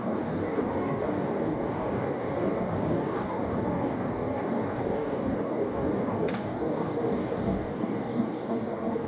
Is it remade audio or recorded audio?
remade